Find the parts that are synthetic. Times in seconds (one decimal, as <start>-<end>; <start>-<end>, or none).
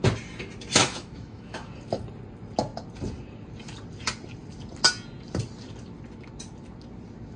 0.8-1.7